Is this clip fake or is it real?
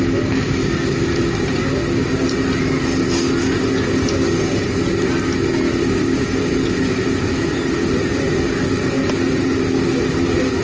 real